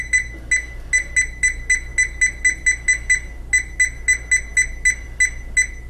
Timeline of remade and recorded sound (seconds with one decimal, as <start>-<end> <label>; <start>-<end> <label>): 0.0-5.9 recorded